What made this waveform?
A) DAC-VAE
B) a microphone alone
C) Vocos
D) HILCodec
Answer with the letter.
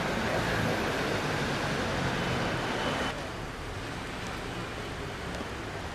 B